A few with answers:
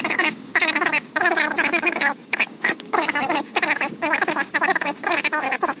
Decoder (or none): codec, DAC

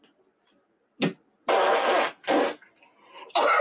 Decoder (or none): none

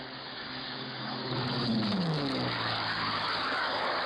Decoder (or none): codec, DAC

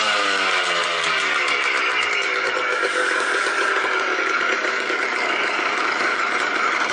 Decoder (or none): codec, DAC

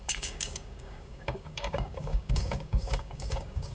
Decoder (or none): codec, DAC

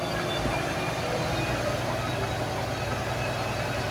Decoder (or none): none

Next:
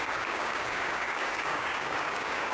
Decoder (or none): codec, DAC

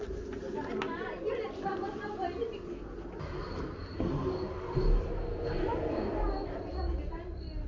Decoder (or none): none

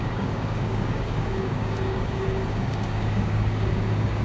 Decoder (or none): codec, DAC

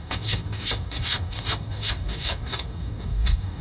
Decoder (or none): codec, DAC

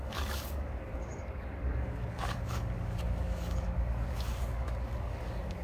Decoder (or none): codec, DAC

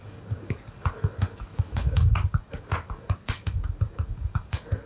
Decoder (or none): codec, DAC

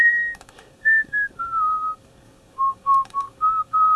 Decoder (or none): codec, DAC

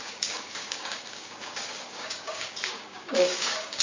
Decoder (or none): codec, DAC